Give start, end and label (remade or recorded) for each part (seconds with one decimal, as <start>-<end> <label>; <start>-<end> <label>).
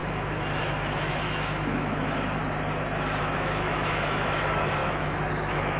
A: 0.0-2.4 remade; 2.4-3.2 recorded; 3.2-5.8 remade